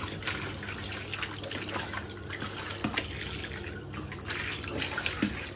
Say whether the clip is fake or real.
real